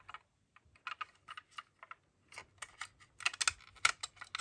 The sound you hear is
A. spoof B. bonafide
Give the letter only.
B